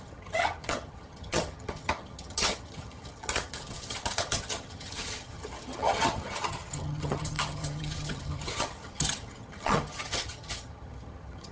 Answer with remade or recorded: remade